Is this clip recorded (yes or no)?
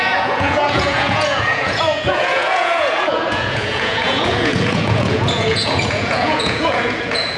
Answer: no